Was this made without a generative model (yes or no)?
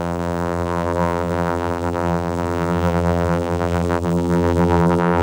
no